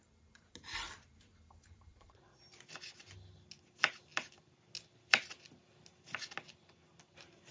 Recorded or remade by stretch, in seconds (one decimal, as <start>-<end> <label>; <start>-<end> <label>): 0.0-1.9 recorded; 1.9-2.4 remade; 2.4-7.5 recorded